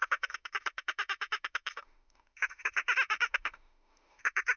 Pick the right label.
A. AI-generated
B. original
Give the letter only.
A